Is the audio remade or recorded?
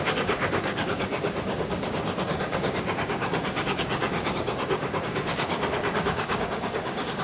remade